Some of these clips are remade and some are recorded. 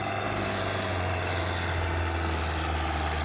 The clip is recorded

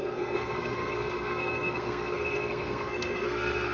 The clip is remade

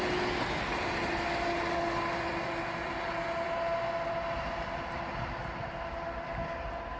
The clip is recorded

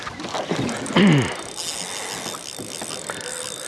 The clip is recorded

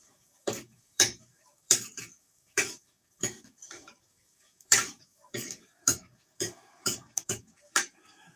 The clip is remade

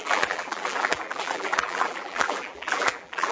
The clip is remade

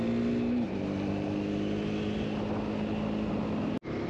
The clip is recorded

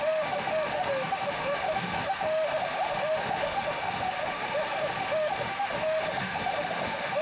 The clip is remade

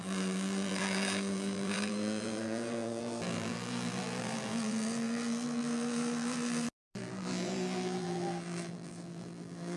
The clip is remade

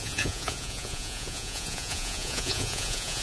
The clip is remade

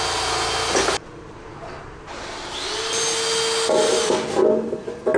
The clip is recorded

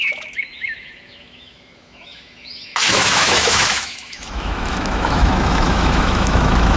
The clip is remade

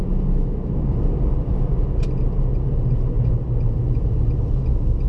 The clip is recorded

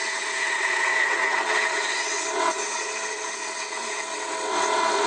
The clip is remade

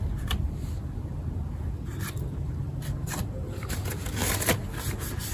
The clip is recorded